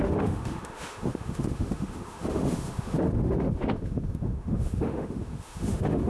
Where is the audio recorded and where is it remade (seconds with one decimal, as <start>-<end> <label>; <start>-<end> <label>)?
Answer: 0.0-6.1 remade